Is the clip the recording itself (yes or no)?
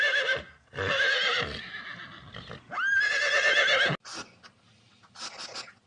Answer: yes